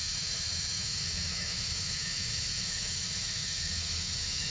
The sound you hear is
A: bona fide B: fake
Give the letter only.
B